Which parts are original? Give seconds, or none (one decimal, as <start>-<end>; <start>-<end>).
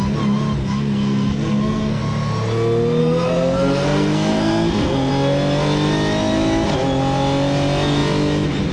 0.0-0.6; 2.0-3.0; 5.1-8.7